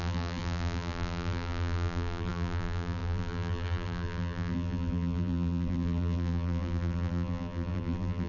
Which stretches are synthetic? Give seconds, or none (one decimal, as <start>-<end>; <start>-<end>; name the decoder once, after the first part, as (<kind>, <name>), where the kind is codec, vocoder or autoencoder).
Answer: 0.0-8.3 (vocoder, BigVGAN v2)